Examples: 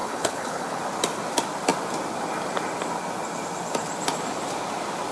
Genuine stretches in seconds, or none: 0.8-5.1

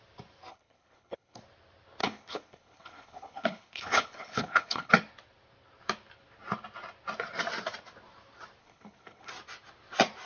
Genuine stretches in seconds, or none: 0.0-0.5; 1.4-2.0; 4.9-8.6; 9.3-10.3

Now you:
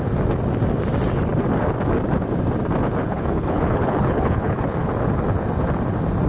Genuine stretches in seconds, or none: 0.0-3.0; 4.9-6.3

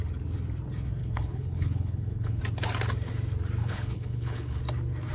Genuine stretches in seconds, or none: 0.0-1.0; 2.4-3.6; 4.6-5.1